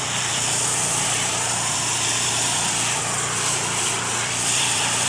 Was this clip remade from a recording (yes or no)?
yes